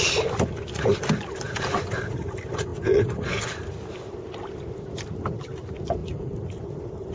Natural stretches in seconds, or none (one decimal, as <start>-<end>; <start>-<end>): 0.0-7.1